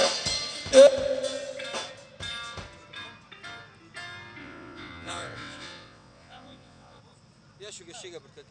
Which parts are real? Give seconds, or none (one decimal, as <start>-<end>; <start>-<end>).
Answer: 0.0-4.4; 7.0-8.5